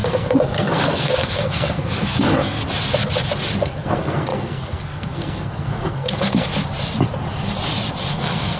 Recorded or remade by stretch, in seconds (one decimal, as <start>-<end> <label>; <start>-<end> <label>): 0.0-2.6 remade; 2.6-3.6 recorded; 3.6-6.5 remade; 6.5-8.1 recorded; 8.1-8.6 remade

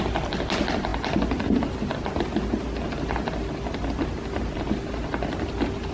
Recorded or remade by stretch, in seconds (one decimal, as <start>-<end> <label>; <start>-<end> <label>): 0.0-5.9 recorded

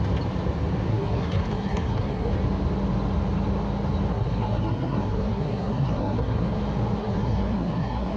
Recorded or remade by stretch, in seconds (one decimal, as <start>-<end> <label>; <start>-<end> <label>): 0.0-0.9 recorded; 0.9-2.3 remade; 2.3-4.1 recorded; 4.1-6.6 remade; 6.6-7.0 recorded; 7.0-8.2 remade

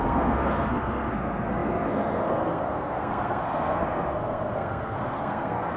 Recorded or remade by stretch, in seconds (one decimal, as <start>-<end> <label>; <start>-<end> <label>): 0.0-5.8 remade

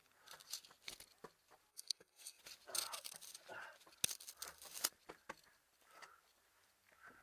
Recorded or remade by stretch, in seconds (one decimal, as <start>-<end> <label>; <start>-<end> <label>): 0.0-1.7 recorded; 1.7-2.4 remade; 2.4-7.2 recorded

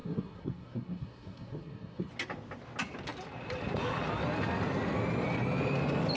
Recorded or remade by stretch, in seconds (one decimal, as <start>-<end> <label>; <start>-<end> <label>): 0.0-2.1 remade; 2.1-6.2 recorded

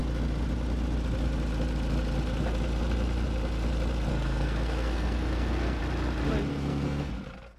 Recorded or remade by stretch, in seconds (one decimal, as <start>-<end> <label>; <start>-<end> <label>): 0.0-4.1 recorded; 4.1-5.8 remade; 5.8-6.5 recorded; 6.5-7.1 remade; 7.1-7.6 recorded